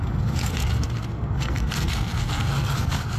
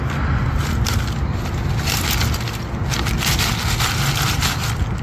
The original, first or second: second